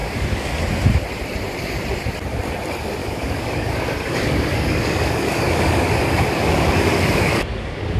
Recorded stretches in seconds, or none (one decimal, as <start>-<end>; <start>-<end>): 0.6-3.0